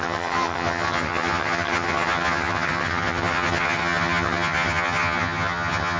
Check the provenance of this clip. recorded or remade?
remade